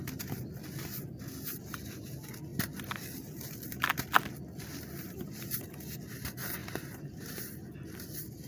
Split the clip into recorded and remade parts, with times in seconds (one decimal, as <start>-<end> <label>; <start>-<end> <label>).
0.0-6.6 recorded; 6.6-7.4 remade; 7.4-8.5 recorded